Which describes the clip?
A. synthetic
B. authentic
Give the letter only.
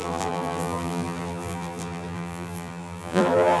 A